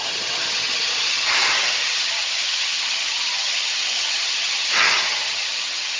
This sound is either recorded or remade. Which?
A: remade